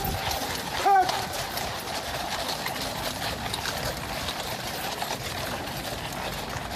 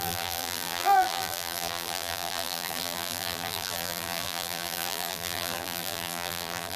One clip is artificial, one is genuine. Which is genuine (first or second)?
first